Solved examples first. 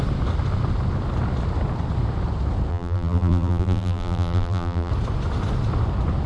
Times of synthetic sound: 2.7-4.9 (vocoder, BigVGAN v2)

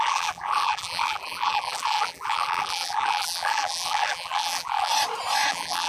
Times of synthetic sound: 0.0-4.9 (vocoder, BigVGAN v2); 5.5-5.9

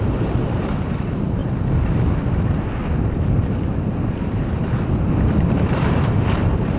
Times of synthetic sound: 0.0-1.4 (vocoder, BigVGAN v2); 5.5-6.8

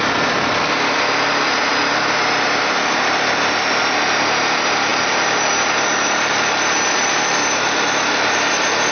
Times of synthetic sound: none

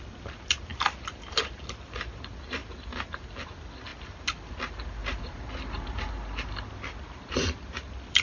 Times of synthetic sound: 2.6-3.3 (vocoder, BigVGAN v2); 5.0-6.1

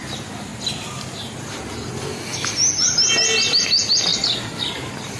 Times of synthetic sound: none

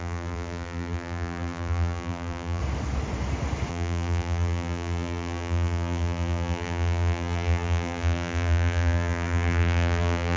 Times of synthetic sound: 0.0-2.6 (vocoder, BigVGAN v2); 3.7-10.4